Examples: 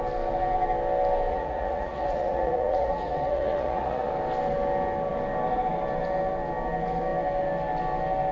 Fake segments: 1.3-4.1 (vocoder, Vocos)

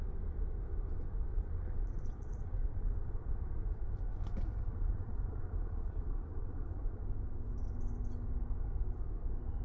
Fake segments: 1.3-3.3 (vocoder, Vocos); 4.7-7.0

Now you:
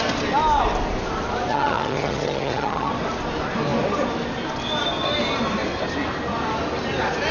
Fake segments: 1.5-2.9 (vocoder, HiFi-GAN)

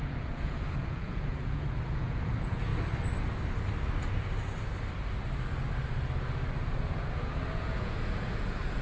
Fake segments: 0.0-2.7 (vocoder, Vocos); 6.8-8.8

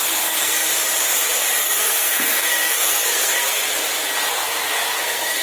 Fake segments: 0.0-0.7 (codec, SNAC); 1.6-3.6; 4.3-5.4

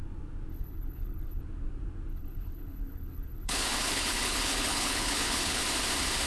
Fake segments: 0.5-1.4 (codec, HILCodec); 2.1-5.6